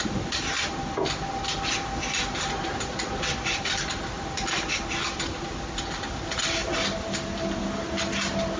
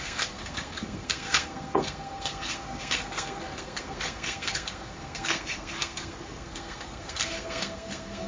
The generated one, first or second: second